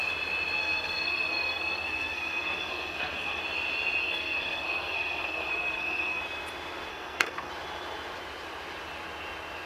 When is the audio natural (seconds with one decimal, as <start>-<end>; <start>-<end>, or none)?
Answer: 0.0-0.6; 3.4-4.0; 6.2-6.9; 7.5-9.7